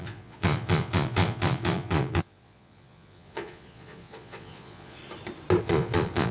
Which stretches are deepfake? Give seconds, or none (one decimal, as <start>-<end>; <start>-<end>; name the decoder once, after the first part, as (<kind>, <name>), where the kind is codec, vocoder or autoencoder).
0.0-5.0 (vocoder, Vocos); 5.6-6.3